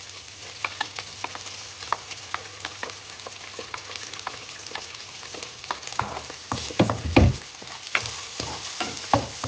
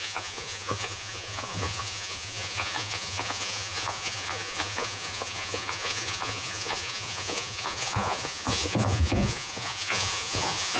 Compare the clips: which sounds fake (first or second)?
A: second